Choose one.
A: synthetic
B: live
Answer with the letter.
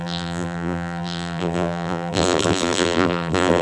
A